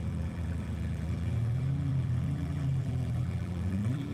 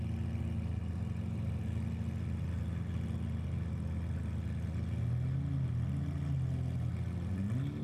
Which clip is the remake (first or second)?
first